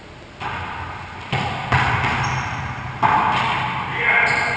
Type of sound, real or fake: real